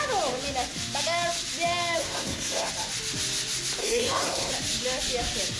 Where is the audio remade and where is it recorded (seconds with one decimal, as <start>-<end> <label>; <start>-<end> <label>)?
0.0-2.0 recorded; 2.0-2.7 remade; 2.7-3.8 recorded; 3.8-4.5 remade; 4.5-5.6 recorded